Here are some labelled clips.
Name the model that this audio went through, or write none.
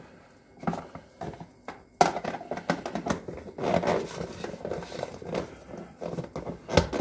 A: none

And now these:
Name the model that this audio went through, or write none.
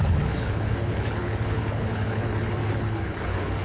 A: codec, HILCodec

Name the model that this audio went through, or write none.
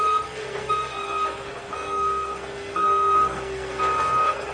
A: codec, SNAC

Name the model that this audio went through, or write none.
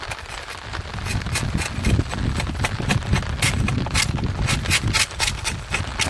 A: none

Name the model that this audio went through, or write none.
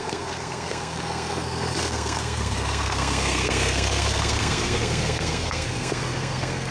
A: codec, SNAC